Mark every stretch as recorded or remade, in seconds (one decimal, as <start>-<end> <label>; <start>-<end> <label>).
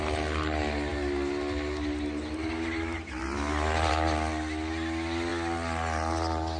0.0-6.6 recorded